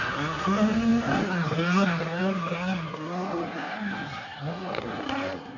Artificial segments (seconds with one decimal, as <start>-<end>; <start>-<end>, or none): 0.0-5.6